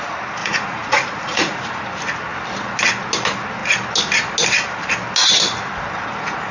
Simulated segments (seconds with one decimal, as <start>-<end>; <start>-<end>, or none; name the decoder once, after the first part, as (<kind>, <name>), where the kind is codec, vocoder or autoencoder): 0.4-1.6 (vocoder, Vocos)